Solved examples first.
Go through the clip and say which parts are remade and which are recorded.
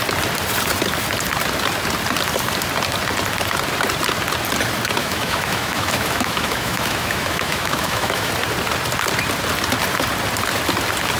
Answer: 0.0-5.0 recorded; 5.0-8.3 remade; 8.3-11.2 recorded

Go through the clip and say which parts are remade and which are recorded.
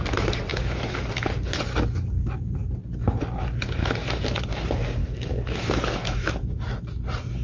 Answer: 0.0-0.5 recorded; 0.5-1.1 remade; 1.1-5.0 recorded; 5.0-6.6 remade; 6.6-7.4 recorded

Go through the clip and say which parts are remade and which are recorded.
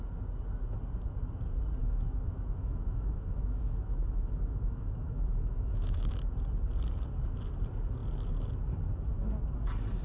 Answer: 0.0-1.8 recorded; 1.8-6.3 remade; 6.3-10.0 recorded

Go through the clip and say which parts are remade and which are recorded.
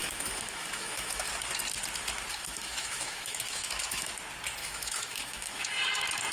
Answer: 0.0-1.3 remade; 1.3-2.3 recorded; 2.3-4.1 remade; 4.1-4.6 recorded; 4.6-5.7 remade; 5.7-6.3 recorded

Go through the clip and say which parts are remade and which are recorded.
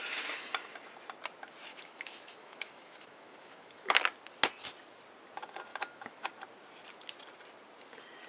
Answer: 0.0-1.7 recorded; 1.7-4.0 remade; 4.0-5.7 recorded; 5.7-6.3 remade; 6.3-8.3 recorded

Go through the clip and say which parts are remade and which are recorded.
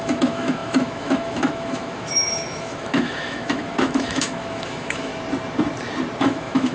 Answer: 0.0-5.1 remade; 5.1-6.2 recorded; 6.2-6.7 remade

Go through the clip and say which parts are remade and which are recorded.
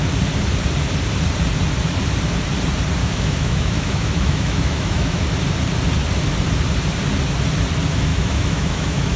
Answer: 0.0-3.0 recorded; 3.0-5.2 remade; 5.2-8.1 recorded; 8.1-9.2 remade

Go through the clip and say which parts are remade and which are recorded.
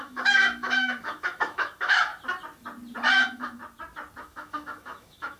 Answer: 0.0-2.1 remade; 2.1-3.1 recorded; 3.1-3.6 remade; 3.6-4.2 recorded; 4.2-5.4 remade